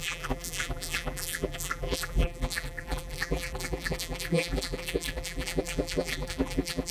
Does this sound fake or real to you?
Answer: fake